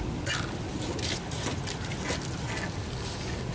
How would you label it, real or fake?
real